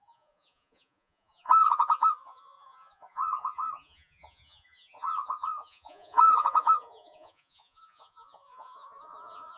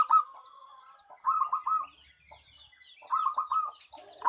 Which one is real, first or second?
second